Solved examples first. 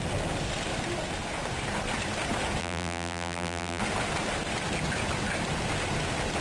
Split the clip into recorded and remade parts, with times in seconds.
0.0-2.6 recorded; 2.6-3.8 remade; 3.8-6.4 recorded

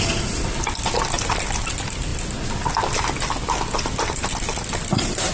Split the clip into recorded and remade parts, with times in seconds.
0.0-5.3 recorded

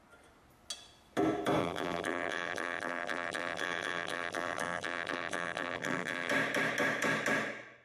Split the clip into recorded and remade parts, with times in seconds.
0.0-1.6 recorded; 1.6-6.3 remade; 6.3-7.8 recorded

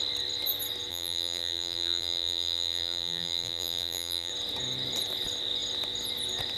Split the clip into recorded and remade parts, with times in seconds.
0.0-0.9 recorded; 0.9-4.3 remade; 4.3-6.6 recorded

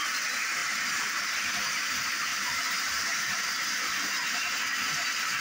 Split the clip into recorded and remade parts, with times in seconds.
0.0-2.3 recorded; 2.3-4.1 remade; 4.1-5.4 recorded